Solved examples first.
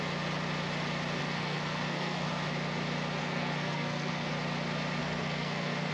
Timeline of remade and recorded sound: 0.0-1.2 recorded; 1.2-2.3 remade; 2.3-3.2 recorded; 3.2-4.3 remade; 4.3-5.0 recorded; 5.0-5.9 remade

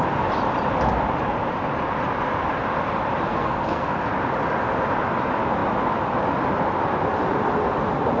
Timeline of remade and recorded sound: 0.0-3.3 recorded; 3.3-4.0 remade; 4.0-8.2 recorded

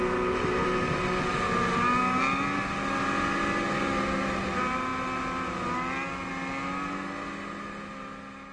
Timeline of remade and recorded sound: 0.0-8.5 recorded